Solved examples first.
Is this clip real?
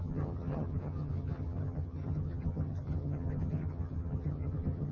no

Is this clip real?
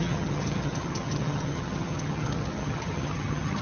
no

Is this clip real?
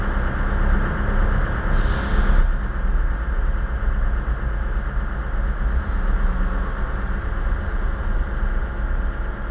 yes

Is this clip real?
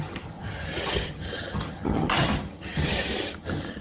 no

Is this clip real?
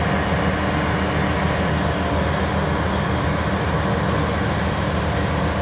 yes